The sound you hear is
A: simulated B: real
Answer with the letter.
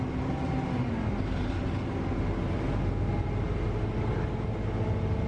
B